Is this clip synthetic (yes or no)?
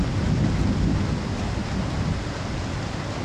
no